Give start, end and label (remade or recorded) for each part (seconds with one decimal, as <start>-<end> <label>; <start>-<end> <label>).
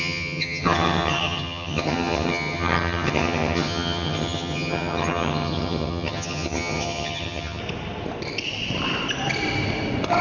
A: 0.0-7.6 remade; 7.6-10.2 recorded